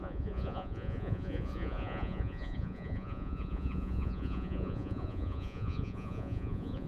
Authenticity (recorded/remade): remade